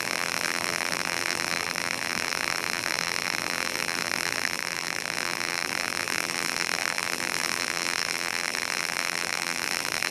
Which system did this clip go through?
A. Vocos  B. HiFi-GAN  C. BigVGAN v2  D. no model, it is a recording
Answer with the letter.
C